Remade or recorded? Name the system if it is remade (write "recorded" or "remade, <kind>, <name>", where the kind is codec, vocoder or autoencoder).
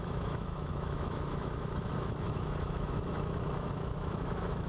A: remade, autoencoder, DAC-VAE